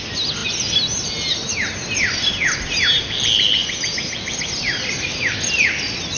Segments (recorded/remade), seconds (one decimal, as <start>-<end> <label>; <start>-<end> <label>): 0.0-6.2 recorded